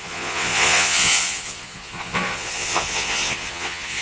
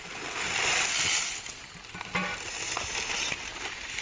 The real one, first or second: second